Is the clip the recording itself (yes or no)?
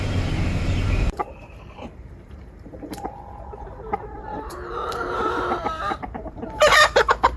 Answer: no